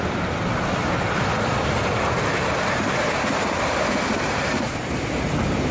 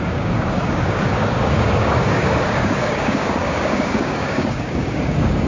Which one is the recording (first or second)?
first